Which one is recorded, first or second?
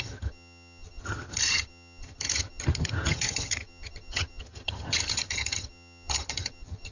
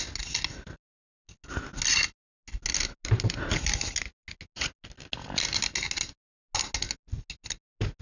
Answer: second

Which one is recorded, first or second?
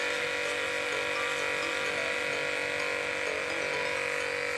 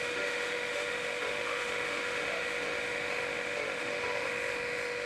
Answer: first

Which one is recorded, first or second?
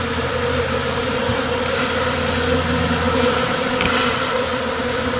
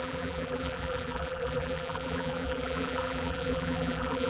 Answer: first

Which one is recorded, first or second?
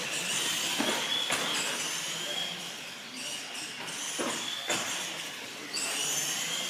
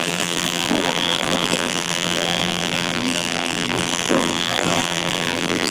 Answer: first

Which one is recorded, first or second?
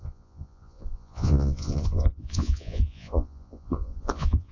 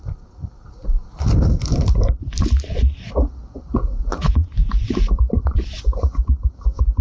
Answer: second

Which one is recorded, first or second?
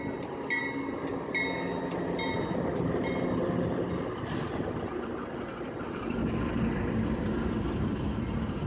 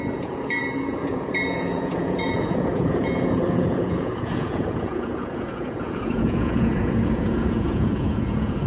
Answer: first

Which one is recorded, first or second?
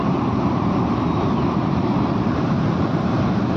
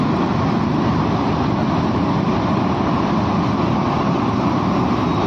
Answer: second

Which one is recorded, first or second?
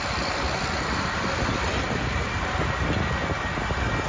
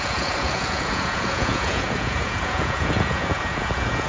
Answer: first